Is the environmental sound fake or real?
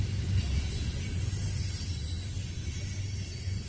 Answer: real